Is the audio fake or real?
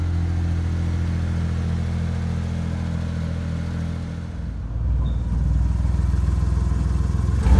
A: real